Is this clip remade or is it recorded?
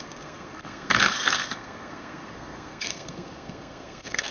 remade